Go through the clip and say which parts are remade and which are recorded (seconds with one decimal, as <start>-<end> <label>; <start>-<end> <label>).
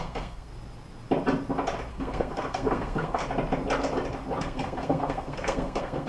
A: 0.0-0.5 remade; 0.5-1.9 recorded; 1.9-3.2 remade; 3.2-4.4 recorded; 4.4-6.1 remade